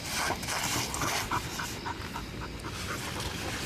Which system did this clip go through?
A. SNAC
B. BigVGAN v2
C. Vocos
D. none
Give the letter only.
D